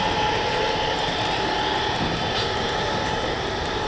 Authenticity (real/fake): fake